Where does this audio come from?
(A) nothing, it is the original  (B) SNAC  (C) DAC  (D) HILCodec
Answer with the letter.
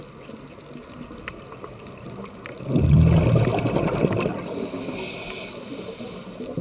A